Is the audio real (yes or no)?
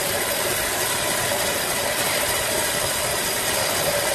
yes